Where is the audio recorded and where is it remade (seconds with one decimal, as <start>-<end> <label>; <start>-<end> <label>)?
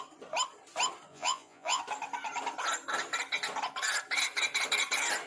0.0-1.1 recorded; 1.1-1.8 remade; 1.8-5.3 recorded